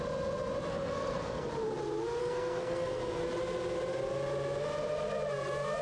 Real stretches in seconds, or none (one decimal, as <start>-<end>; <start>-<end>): 0.0-0.7; 1.5-2.2; 3.2-5.8